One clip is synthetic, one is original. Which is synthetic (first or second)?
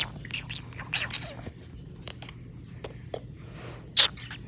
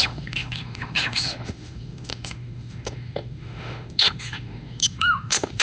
second